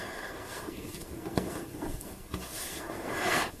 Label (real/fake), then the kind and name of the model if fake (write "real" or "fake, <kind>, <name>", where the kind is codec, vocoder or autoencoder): fake, codec, SNAC